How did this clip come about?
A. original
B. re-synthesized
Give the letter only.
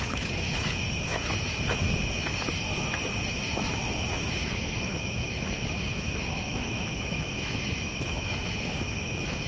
B